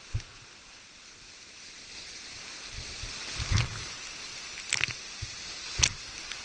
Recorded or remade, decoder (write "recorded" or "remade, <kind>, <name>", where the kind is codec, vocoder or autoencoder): recorded